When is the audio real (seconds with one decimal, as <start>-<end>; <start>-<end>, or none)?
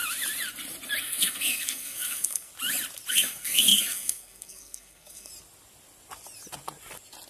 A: 0.0-1.0; 2.5-3.1; 5.3-7.3